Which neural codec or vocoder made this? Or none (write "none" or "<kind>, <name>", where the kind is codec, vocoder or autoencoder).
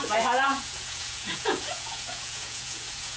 vocoder, Vocos